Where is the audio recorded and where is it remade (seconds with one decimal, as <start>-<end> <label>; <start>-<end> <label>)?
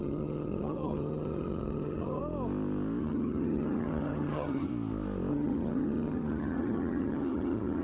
0.0-2.2 remade; 2.2-3.0 recorded; 3.0-4.7 remade; 4.7-5.3 recorded; 5.3-7.8 remade